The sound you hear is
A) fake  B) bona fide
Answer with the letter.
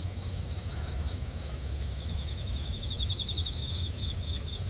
A